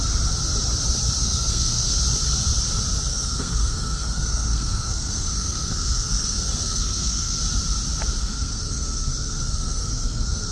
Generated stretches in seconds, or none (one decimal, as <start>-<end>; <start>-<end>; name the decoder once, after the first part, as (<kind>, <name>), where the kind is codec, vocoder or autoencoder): 1.2-2.0 (codec, SNAC); 3.1-7.4; 8.2-10.5

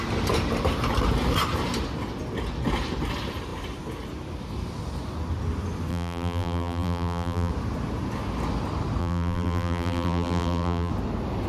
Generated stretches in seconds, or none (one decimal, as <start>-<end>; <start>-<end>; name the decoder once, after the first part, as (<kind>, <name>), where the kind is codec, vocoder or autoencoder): 5.9-7.5 (vocoder, BigVGAN v2); 9.0-10.9

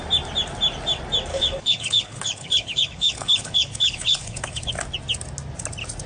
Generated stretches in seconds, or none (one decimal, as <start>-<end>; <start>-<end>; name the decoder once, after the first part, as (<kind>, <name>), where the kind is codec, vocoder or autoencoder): 1.3-4.7 (codec, HILCodec)

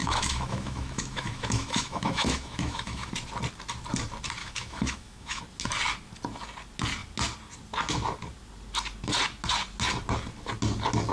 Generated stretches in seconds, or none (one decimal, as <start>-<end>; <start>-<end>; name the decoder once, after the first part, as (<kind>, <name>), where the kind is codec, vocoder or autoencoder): 0.0-3.1 (autoencoder, DAC-VAE); 4.4-5.4